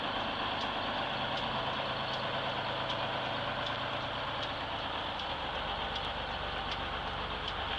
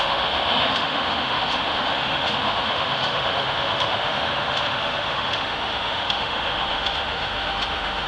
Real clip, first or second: first